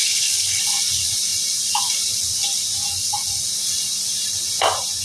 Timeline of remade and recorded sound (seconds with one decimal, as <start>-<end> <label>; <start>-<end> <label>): 0.0-0.6 remade; 0.6-5.0 recorded